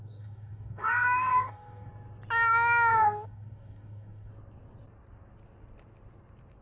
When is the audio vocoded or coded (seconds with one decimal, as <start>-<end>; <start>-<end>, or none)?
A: 0.0-1.9; 2.9-4.3